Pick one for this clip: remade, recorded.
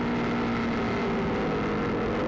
recorded